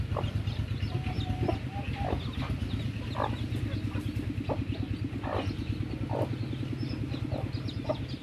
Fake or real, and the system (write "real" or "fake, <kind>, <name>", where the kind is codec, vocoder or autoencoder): real